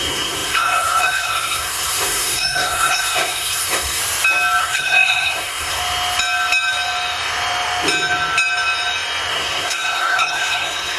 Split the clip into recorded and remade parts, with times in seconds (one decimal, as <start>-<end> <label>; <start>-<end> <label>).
0.0-4.0 remade; 4.0-4.6 recorded; 4.6-5.8 remade; 5.8-9.3 recorded; 9.3-11.0 remade